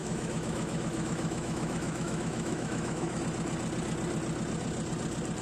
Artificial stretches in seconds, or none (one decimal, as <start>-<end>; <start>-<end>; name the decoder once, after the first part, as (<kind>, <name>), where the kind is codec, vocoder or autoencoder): 0.0-3.2 (autoencoder, DAC-VAE)